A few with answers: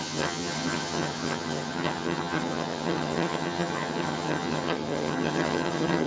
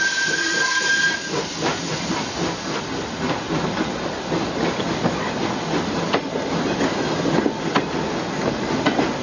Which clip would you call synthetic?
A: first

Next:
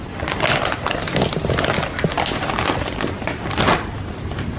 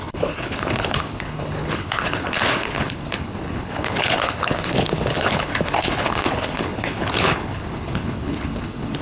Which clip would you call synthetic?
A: second